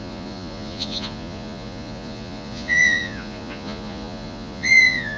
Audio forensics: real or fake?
fake